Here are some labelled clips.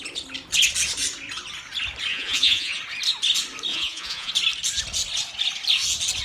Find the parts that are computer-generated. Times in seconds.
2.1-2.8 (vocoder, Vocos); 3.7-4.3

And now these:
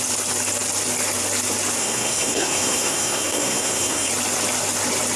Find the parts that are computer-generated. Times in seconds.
1.8-4.1 (codec, SNAC)

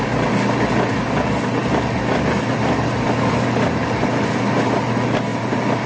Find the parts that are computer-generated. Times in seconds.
none

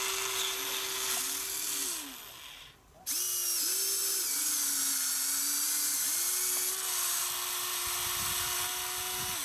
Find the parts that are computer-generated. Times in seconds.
none

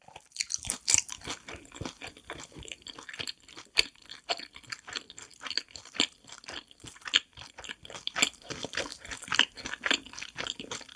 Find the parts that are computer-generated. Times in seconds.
none